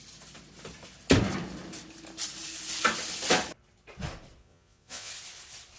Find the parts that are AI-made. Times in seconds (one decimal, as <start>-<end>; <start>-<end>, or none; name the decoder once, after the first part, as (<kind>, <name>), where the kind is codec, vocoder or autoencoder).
4.4-5.1 (vocoder, Vocos)